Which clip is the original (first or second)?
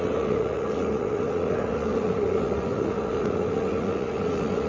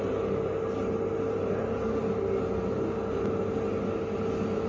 second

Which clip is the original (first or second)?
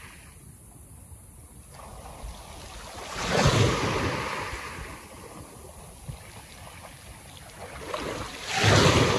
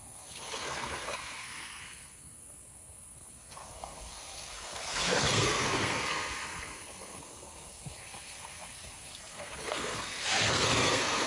first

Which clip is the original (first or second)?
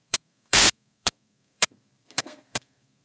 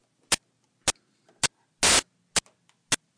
second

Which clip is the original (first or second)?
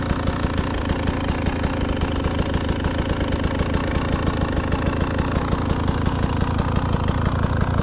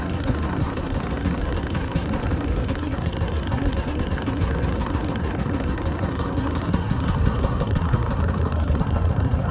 first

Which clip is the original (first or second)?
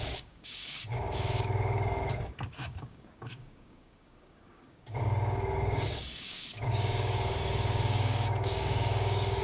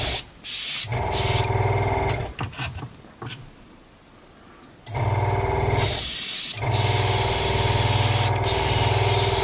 second